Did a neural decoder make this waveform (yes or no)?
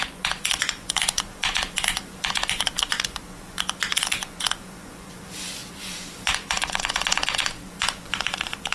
yes